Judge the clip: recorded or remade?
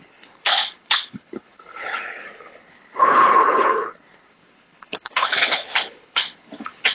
remade